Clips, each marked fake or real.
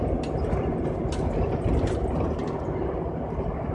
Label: real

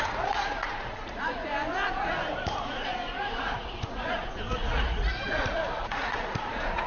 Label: fake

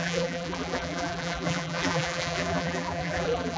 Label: fake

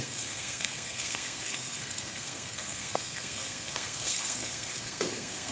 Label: fake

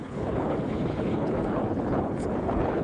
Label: fake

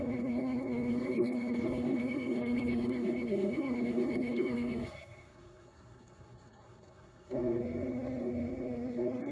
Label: fake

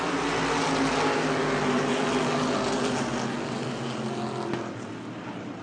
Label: real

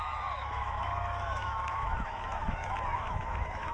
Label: fake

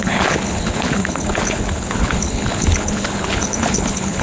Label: fake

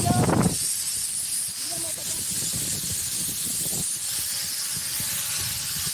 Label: real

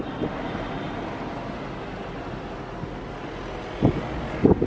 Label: real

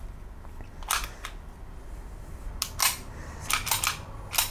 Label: real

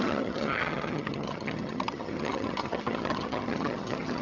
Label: fake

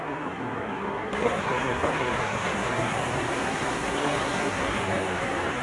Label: fake